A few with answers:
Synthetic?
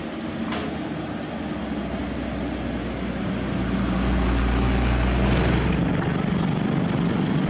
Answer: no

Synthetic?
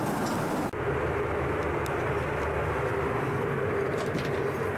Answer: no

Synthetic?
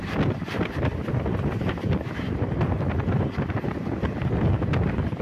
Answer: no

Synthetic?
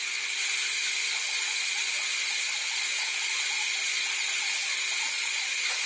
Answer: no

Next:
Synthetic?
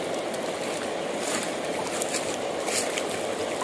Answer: no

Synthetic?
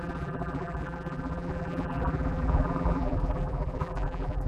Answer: yes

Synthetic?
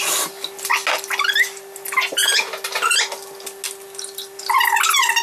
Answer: no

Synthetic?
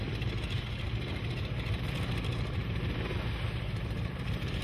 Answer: yes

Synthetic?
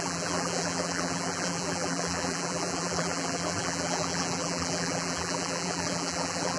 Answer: yes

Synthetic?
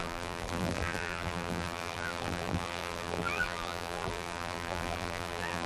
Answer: yes